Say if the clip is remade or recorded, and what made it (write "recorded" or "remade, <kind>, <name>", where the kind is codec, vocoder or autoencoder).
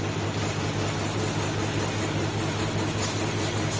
recorded